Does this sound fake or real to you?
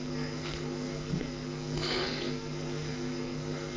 fake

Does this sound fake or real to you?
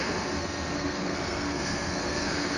fake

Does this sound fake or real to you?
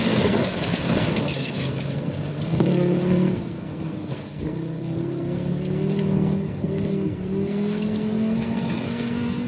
fake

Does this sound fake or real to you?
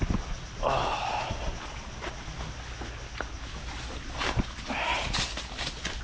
real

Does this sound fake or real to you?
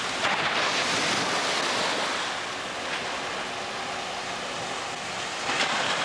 real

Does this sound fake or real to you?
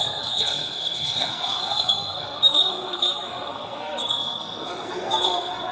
fake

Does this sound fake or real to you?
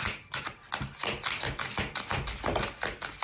real